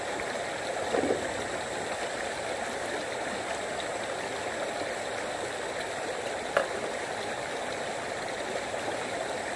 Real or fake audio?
real